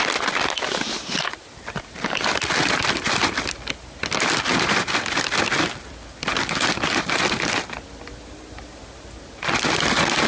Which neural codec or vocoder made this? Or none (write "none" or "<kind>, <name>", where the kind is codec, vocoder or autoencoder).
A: none